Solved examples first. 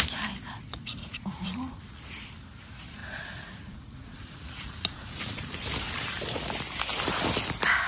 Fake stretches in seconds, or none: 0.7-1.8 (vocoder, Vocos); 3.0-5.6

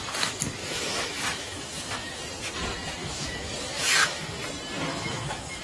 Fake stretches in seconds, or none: 0.6-2.2 (autoencoder, DAC-VAE); 3.0-4.4; 4.9-5.6